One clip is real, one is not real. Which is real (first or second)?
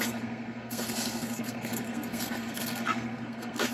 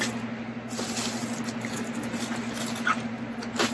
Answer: second